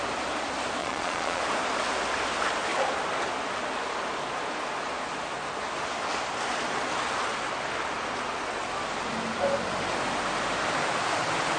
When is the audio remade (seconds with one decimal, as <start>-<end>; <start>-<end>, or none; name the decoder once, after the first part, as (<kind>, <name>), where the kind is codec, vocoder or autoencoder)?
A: 0.8-1.4 (vocoder, Vocos)